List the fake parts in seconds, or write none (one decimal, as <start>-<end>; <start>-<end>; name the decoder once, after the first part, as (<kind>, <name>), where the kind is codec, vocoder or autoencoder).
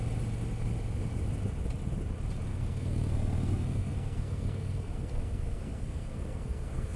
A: 2.5-7.0 (codec, SNAC)